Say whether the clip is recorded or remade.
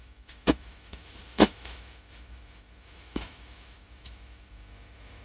remade